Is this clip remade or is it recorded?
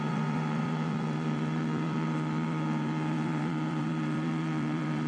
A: remade